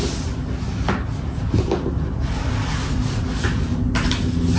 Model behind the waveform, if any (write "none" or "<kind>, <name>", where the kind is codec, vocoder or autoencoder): none